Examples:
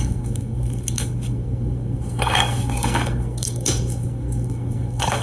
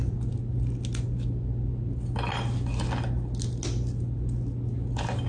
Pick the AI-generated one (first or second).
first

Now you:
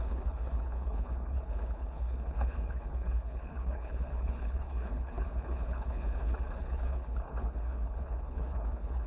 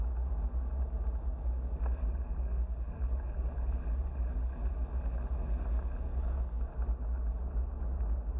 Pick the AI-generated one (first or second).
first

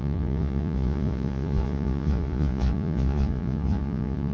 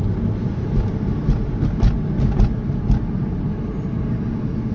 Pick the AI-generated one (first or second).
first